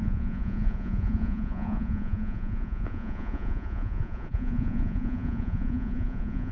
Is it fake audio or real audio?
fake